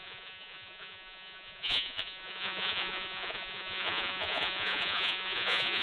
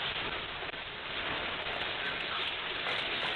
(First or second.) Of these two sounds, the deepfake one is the first